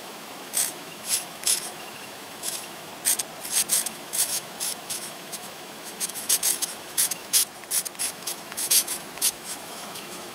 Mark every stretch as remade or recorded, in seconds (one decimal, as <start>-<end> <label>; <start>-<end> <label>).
0.0-2.9 remade; 2.9-3.7 recorded; 3.7-7.4 remade; 7.4-8.0 recorded; 8.0-10.3 remade